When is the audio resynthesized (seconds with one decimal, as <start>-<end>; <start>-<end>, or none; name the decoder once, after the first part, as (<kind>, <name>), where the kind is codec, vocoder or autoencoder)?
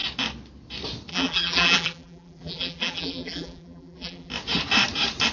1.1-4.3 (vocoder, BigVGAN v2)